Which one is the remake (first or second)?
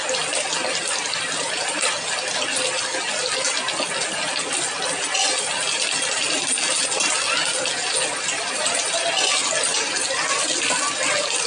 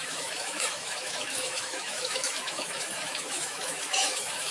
second